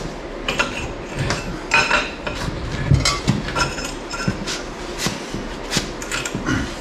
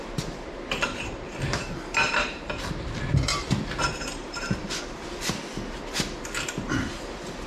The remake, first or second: second